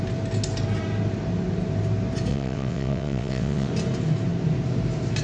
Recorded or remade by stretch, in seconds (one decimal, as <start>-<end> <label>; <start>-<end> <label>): 0.0-2.3 recorded; 2.3-3.7 remade; 3.7-5.2 recorded